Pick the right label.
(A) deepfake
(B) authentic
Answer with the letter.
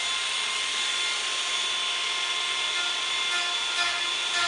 B